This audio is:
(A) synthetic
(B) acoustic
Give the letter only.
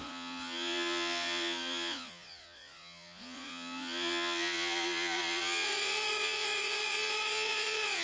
A